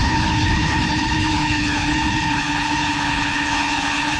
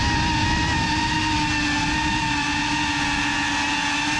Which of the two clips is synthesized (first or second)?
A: first